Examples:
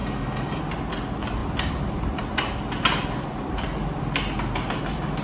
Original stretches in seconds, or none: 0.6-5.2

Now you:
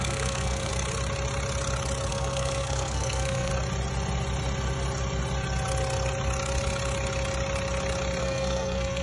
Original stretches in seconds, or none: 0.7-2.1; 3.5-8.2

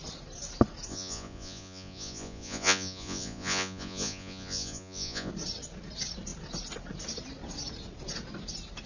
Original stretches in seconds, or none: 0.0-0.9; 5.3-8.9

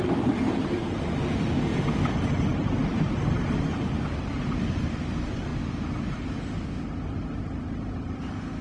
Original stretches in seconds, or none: 0.0-8.6

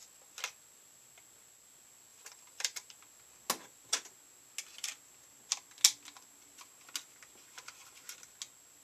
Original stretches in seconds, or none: 0.0-2.1; 3.0-8.8